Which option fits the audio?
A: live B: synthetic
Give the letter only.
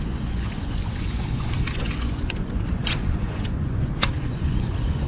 B